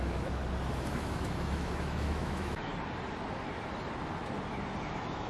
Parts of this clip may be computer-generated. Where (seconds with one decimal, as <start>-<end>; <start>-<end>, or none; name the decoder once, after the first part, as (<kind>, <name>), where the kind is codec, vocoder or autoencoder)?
0.0-0.4 (autoencoder, DAC-VAE); 0.9-2.7; 4.8-5.3